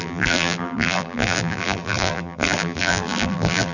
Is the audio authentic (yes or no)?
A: no